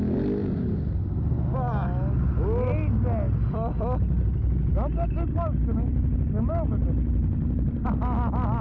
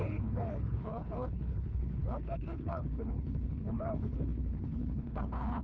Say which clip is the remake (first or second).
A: second